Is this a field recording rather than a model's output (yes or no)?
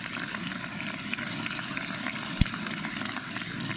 yes